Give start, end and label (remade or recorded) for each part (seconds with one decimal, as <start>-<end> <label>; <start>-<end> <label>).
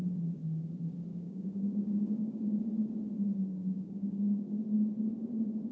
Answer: 0.0-1.1 recorded; 1.1-2.6 remade; 2.6-3.6 recorded; 3.6-4.6 remade; 4.6-5.7 recorded